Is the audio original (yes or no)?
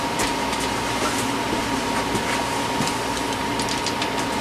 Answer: yes